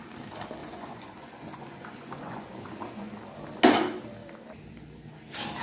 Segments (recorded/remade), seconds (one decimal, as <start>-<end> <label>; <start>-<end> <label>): 0.0-0.6 recorded; 0.6-3.1 remade; 3.1-5.6 recorded